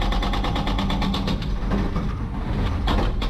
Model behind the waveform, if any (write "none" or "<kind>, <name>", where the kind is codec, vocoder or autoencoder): none